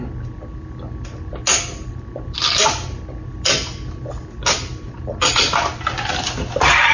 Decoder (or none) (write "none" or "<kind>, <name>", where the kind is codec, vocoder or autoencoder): none